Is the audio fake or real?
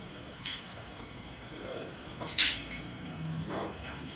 fake